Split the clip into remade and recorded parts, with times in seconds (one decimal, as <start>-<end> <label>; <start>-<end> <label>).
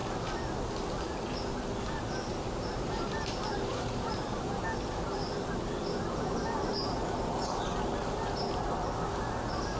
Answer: 0.0-2.3 recorded; 2.3-6.7 remade; 6.7-9.8 recorded